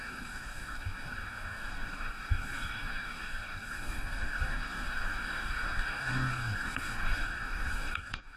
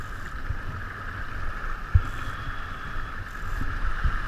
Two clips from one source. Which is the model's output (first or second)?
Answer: first